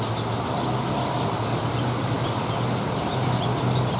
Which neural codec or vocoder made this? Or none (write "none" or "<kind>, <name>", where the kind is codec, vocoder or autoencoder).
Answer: none